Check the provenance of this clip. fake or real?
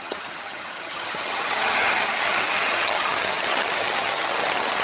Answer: fake